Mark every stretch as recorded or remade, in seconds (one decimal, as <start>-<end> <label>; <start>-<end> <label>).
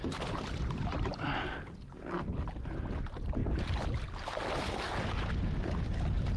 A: 0.0-6.4 recorded